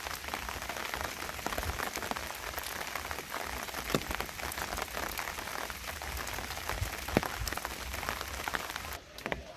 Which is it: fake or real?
real